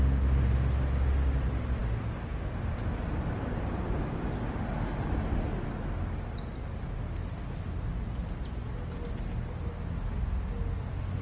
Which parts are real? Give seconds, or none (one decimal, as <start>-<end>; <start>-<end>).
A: 0.0-11.2